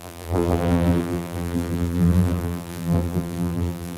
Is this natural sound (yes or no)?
no